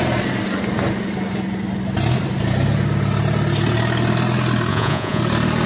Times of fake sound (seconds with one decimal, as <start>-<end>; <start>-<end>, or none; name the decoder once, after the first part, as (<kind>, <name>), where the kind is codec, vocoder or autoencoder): 4.7-5.2 (vocoder, Vocos)